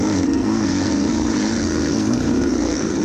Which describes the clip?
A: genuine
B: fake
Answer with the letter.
B